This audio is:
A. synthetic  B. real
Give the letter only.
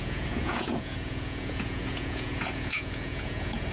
A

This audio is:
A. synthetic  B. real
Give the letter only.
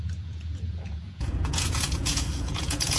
A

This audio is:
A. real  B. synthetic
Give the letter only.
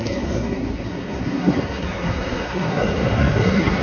B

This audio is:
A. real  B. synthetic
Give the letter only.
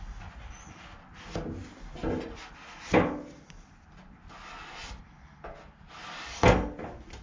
A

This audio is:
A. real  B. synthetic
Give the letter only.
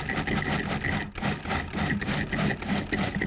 A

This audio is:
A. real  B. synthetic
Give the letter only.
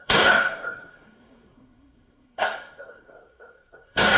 B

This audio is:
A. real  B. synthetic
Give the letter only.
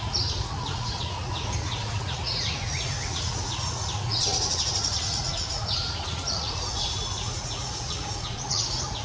B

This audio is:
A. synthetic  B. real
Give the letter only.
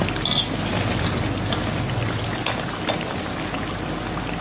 B